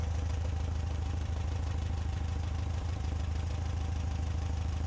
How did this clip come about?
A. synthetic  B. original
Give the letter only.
A